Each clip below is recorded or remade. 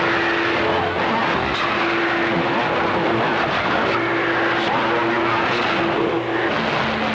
recorded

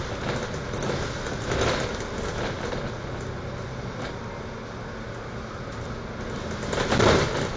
recorded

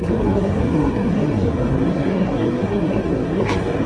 remade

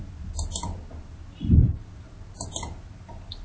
recorded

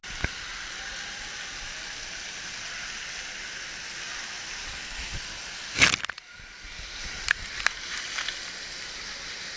recorded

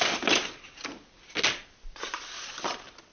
recorded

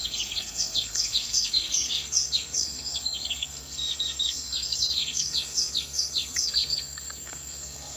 remade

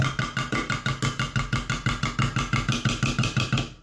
recorded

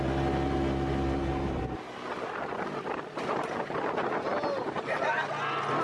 recorded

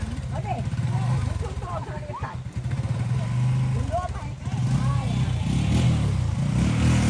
recorded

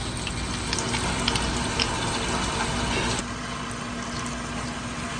recorded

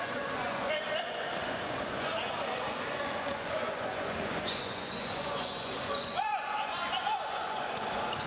remade